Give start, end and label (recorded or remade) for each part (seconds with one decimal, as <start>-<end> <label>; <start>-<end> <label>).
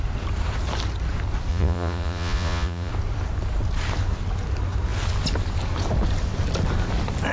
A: 0.0-1.5 recorded; 1.5-2.9 remade; 2.9-7.3 recorded